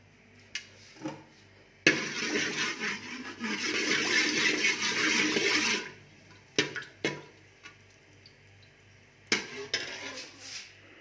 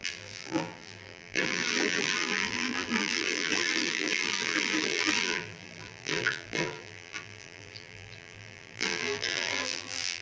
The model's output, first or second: second